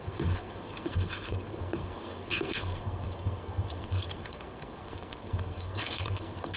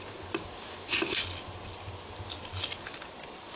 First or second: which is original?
second